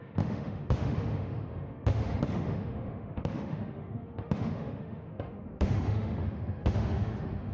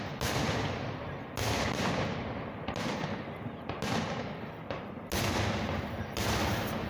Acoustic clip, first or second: second